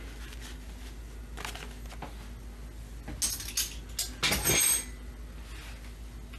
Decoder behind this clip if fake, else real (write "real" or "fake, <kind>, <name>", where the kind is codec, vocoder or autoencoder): real